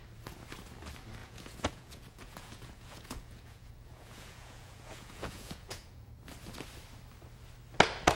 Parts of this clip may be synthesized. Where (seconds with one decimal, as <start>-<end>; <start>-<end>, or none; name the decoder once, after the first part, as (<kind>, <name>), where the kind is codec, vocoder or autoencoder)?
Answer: 1.2-6.1 (vocoder, Vocos)